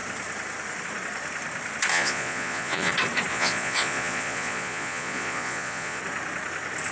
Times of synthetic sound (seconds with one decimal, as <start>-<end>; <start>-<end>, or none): 1.9-2.9; 3.3-6.0

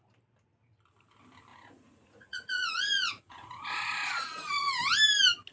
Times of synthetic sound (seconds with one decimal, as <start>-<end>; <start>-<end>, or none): 1.5-4.8

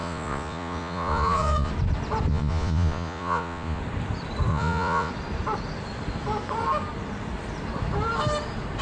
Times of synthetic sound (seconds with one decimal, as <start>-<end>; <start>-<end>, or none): 0.0-1.7; 2.3-3.8; 4.5-5.1

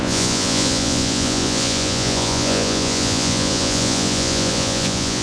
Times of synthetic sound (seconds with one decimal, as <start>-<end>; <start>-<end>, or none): 0.0-5.2

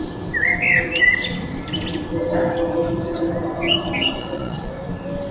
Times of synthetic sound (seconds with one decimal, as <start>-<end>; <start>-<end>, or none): 4.2-4.7